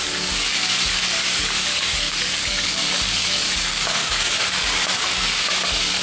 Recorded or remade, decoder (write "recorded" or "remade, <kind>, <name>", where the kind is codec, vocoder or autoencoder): remade, codec, DAC